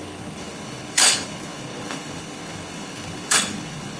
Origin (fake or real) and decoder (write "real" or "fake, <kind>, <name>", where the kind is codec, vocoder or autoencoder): fake, codec, HILCodec